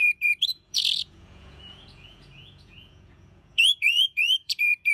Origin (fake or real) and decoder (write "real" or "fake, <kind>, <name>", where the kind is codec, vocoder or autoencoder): fake, vocoder, Vocos